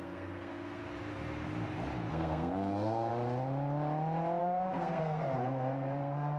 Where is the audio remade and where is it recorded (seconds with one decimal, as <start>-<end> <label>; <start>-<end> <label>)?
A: 0.0-0.8 remade; 0.8-2.1 recorded; 2.1-3.1 remade; 3.1-4.4 recorded; 4.4-6.4 remade